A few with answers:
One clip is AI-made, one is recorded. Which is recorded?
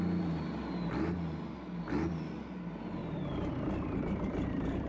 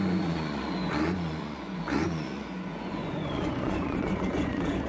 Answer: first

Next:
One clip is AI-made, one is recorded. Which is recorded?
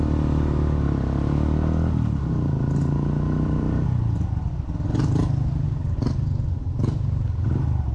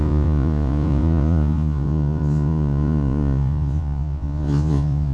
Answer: first